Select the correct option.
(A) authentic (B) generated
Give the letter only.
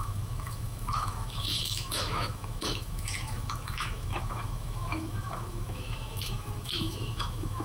B